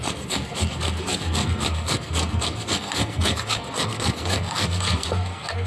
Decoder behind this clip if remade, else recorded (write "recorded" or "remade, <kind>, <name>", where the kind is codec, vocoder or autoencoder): remade, codec, SNAC